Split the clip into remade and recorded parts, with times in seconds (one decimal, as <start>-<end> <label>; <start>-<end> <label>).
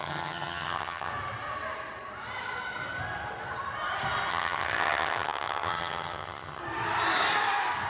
0.0-1.1 remade; 1.1-4.3 recorded; 4.3-6.6 remade; 6.6-7.9 recorded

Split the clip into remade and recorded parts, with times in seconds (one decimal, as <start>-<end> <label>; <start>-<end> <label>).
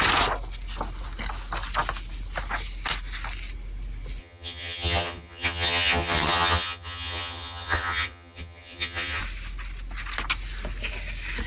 0.0-4.2 recorded; 4.2-9.2 remade; 9.2-11.5 recorded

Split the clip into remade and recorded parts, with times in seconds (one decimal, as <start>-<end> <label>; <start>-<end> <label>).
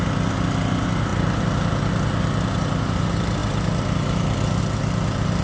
0.0-5.4 recorded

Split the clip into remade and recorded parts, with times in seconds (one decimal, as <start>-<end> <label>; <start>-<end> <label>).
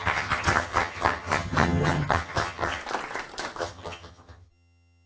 0.0-2.8 remade; 2.8-3.6 recorded; 3.6-5.1 remade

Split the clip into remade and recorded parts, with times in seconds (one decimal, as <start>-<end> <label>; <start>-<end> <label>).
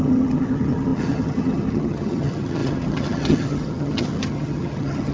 0.0-5.1 remade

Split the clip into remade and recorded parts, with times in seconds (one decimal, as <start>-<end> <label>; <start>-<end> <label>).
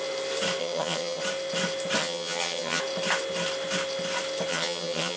0.0-0.6 recorded; 0.6-1.2 remade; 1.2-2.0 recorded; 2.0-2.8 remade; 2.8-4.5 recorded; 4.5-5.2 remade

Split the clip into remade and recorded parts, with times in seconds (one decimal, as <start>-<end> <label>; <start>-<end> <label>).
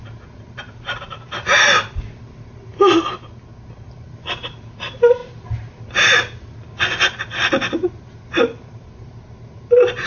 0.0-10.1 recorded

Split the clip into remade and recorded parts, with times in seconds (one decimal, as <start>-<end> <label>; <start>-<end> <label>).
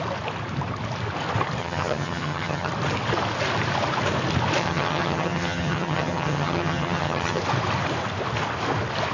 0.0-1.6 recorded; 1.6-2.7 remade; 2.7-4.6 recorded; 4.6-7.4 remade; 7.4-9.1 recorded